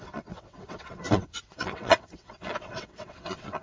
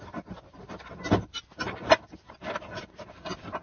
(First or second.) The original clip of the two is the second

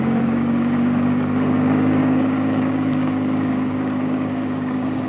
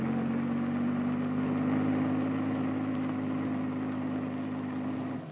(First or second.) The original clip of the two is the second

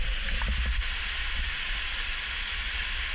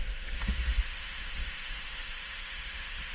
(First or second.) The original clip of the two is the first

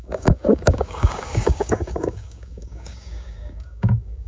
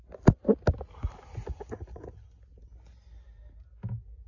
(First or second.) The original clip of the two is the second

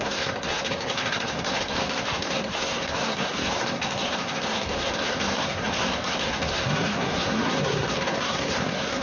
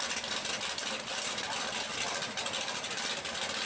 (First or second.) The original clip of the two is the second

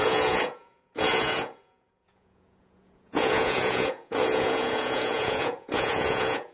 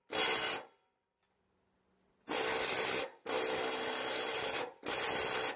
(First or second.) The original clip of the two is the second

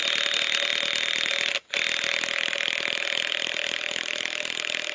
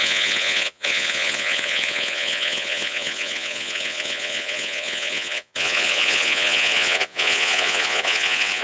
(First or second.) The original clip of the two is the first